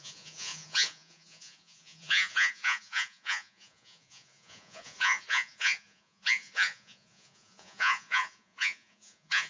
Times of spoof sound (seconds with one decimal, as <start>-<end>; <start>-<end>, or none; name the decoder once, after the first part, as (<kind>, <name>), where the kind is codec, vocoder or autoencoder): 0.0-9.5 (vocoder, Vocos)